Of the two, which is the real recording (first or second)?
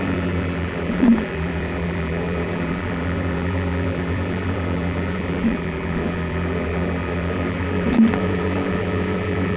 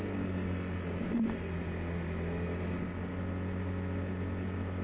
second